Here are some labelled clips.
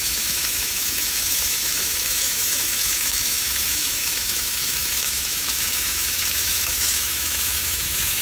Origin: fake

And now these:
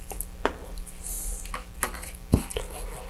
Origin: real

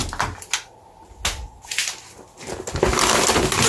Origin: real